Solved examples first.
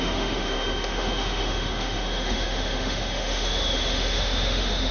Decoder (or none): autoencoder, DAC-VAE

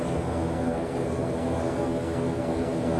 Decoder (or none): codec, SNAC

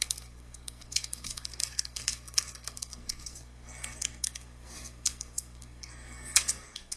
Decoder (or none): codec, SNAC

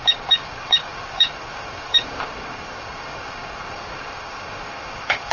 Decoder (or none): codec, DAC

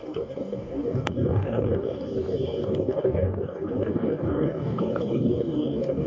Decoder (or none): codec, DAC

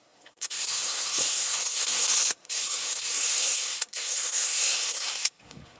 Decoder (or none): codec, SNAC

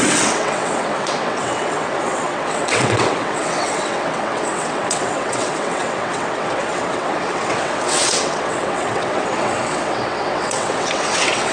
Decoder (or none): vocoder, WaveNeXt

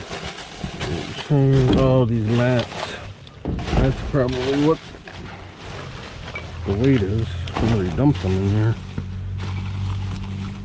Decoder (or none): none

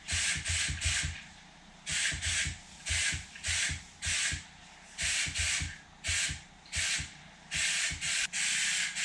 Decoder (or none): none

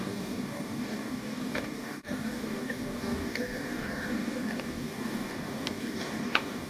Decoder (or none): codec, DAC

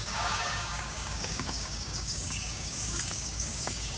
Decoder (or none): codec, DAC